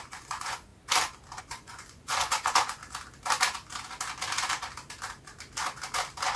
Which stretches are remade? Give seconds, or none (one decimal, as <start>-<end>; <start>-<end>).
0.0-0.7; 1.4-2.8